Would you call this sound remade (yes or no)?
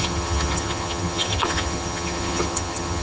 yes